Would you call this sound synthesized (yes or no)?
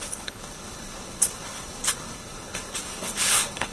yes